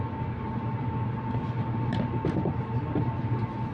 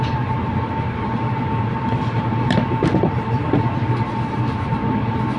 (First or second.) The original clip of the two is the first